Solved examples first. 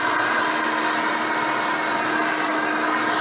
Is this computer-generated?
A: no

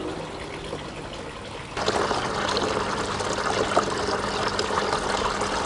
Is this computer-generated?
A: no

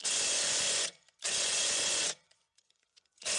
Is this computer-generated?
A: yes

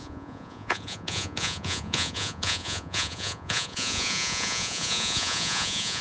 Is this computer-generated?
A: yes